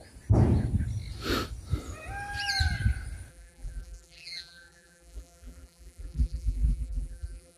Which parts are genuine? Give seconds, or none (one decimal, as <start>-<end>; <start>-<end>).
0.0-3.3